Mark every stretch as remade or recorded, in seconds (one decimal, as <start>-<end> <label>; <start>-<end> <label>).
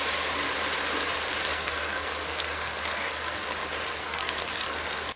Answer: 0.0-1.5 recorded; 1.5-3.4 remade; 3.4-4.0 recorded; 4.0-4.8 remade; 4.8-5.2 recorded